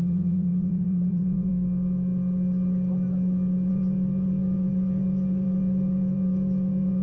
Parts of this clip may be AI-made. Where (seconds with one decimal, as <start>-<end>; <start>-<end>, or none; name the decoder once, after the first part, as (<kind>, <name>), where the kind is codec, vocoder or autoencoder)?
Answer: 0.0-1.5 (vocoder, Vocos); 3.7-7.0